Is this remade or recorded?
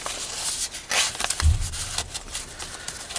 recorded